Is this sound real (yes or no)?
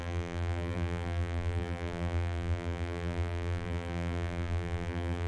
no